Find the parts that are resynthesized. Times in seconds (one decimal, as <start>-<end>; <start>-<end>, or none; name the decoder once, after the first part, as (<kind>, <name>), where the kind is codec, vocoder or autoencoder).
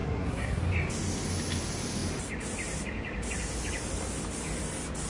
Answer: 0.0-0.6 (codec, SNAC)